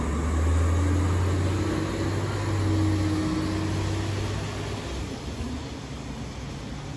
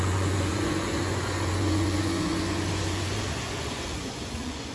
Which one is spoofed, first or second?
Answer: second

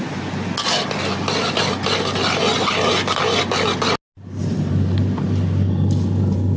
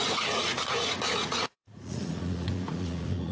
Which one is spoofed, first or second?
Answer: second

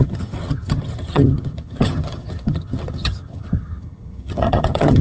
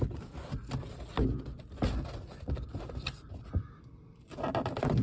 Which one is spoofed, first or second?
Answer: first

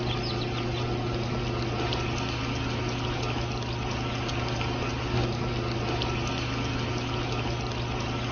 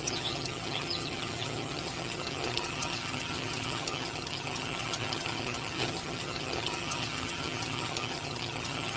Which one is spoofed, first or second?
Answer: second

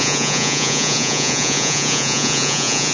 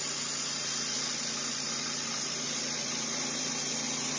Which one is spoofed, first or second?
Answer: first